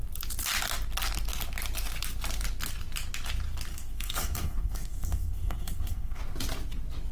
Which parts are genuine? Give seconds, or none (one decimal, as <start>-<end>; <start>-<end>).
0.0-3.7; 6.2-7.1